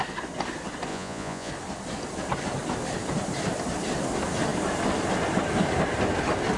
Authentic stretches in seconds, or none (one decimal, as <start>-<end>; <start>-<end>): 0.0-0.9; 1.5-6.6